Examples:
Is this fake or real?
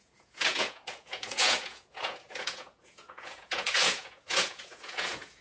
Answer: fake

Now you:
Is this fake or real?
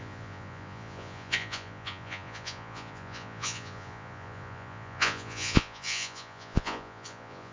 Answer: fake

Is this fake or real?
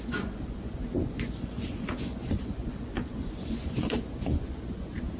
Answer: fake